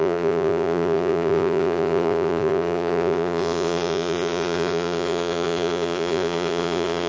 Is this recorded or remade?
remade